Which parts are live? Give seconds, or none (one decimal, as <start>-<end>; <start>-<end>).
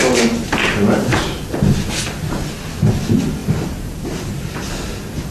0.0-0.6; 1.3-3.4; 4.7-5.3